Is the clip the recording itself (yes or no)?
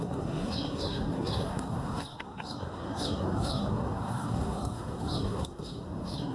no